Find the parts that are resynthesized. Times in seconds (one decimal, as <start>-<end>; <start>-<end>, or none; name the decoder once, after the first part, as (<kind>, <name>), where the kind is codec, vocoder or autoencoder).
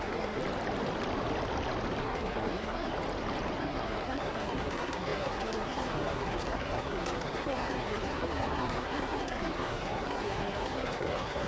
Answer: 0.0-0.4 (codec, SNAC); 2.0-2.9; 3.6-11.5